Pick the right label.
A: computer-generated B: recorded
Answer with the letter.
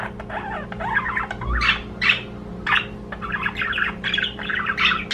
B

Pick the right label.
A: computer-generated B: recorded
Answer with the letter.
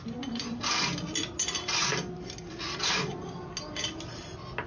B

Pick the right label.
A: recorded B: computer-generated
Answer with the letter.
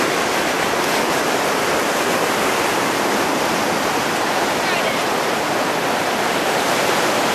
B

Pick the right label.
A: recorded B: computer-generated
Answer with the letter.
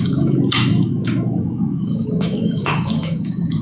B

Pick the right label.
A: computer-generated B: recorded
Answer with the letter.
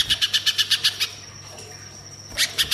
B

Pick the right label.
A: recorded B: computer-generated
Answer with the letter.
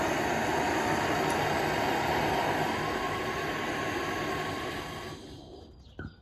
A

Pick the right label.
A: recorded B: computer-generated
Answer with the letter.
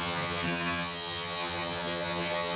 B